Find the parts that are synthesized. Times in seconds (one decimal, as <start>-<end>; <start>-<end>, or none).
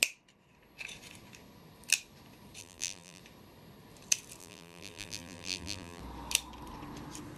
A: 2.6-3.2; 4.4-6.0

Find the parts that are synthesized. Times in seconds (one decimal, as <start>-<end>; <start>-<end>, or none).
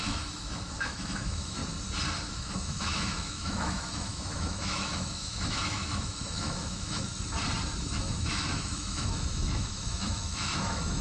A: 0.0-1.6; 2.3-7.1; 7.8-11.0